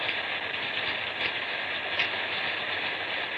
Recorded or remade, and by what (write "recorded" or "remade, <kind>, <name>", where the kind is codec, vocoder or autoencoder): recorded